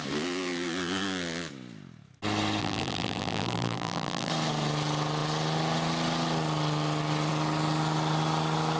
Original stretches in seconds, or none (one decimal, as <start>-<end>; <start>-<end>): 0.0-2.6; 4.3-8.8